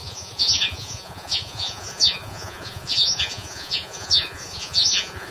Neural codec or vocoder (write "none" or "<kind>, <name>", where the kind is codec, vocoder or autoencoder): vocoder, Vocos